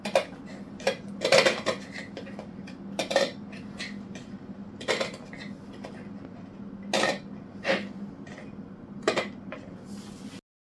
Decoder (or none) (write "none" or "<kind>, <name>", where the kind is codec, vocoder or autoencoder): none